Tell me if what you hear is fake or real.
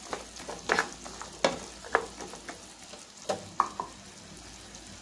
real